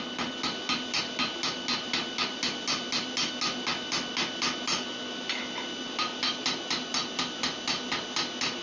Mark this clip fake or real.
real